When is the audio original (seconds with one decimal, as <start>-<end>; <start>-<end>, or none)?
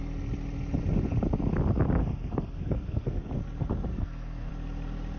0.0-2.0; 3.3-3.9; 4.5-5.2